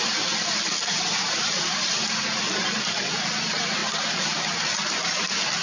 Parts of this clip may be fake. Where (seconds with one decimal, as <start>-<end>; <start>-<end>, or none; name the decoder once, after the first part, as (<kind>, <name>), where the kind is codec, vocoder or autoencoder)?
none